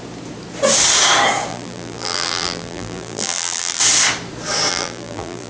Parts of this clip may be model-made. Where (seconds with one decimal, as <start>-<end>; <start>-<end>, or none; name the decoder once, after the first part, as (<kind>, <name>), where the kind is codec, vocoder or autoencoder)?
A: 1.5-3.8 (vocoder, BigVGAN v2); 4.7-5.5